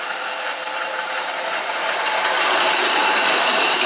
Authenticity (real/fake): fake